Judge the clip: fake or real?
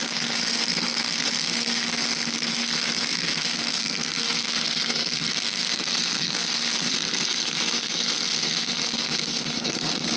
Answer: fake